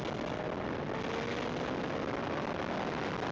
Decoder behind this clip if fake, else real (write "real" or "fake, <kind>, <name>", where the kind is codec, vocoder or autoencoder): real